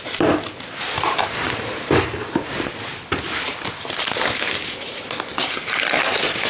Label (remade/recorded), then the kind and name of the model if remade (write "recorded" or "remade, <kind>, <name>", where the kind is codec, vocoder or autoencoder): recorded